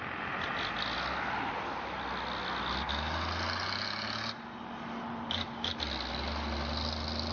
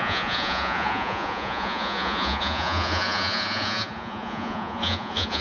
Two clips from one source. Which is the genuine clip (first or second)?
first